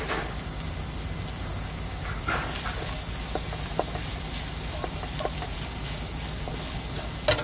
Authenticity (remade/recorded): recorded